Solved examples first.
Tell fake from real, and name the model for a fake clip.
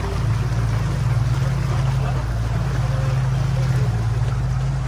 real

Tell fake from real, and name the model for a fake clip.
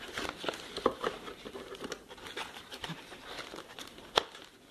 real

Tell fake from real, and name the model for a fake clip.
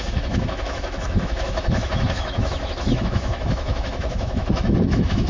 fake, autoencoder, DAC-VAE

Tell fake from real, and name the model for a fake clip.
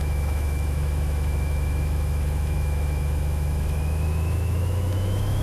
fake, autoencoder, DAC-VAE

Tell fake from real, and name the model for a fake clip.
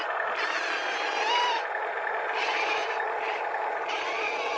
real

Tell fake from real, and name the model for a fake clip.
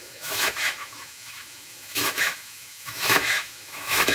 fake, autoencoder, DAC-VAE